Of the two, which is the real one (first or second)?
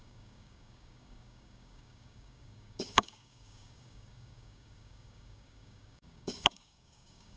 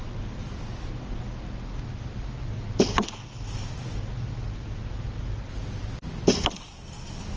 second